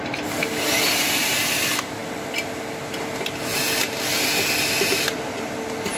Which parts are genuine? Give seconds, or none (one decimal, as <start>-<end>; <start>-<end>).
0.0-6.0